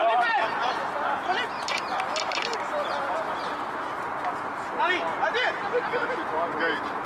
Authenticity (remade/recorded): recorded